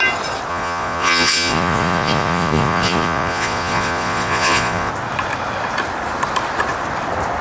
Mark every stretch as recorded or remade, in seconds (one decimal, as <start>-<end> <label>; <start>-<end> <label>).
0.0-0.5 recorded; 0.5-4.9 remade; 4.9-7.4 recorded